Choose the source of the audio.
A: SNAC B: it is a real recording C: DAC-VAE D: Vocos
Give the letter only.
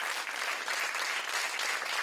B